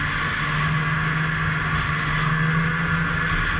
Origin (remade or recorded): recorded